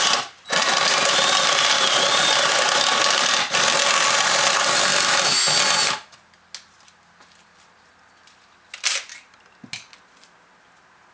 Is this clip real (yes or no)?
yes